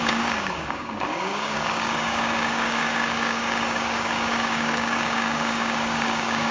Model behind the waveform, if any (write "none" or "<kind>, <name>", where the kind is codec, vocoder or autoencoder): codec, DAC